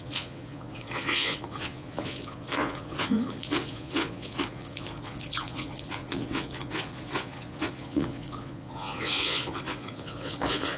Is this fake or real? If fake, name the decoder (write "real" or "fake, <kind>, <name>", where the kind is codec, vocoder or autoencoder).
fake, vocoder, Vocos